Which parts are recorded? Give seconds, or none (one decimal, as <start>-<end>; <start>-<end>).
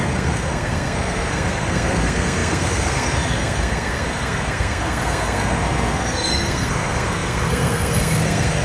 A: none